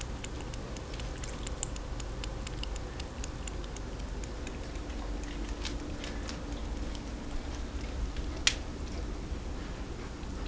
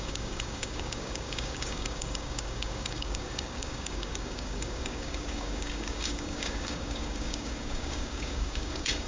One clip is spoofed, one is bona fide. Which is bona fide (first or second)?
first